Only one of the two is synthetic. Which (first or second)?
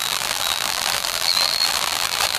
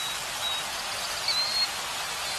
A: first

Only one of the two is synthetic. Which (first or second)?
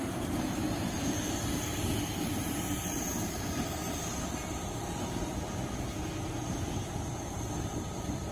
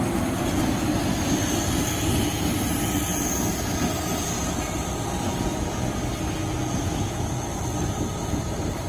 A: first